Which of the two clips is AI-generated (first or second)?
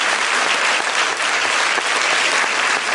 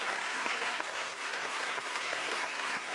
second